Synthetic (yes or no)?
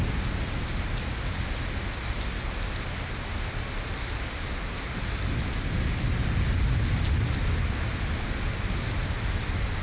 no